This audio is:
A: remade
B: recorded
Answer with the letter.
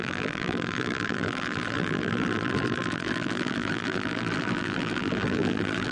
A